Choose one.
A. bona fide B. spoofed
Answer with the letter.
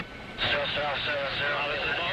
A